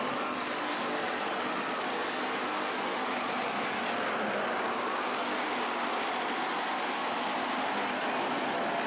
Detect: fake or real real